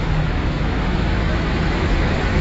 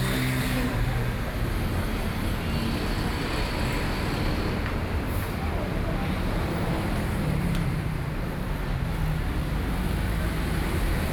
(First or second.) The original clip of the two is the second